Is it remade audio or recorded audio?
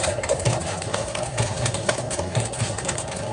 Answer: remade